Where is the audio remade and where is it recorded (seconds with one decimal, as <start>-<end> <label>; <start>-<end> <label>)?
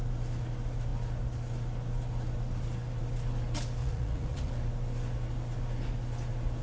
0.0-3.8 recorded; 3.8-4.5 remade; 4.5-6.6 recorded